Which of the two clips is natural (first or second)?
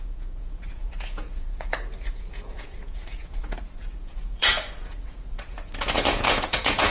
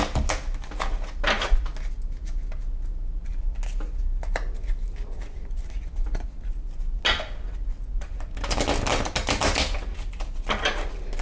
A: second